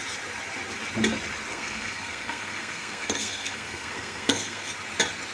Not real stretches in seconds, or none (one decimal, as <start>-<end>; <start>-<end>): 1.5-4.7